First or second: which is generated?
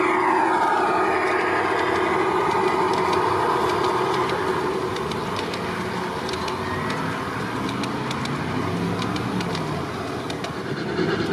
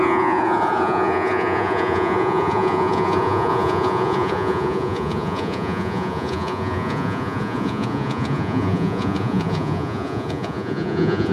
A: second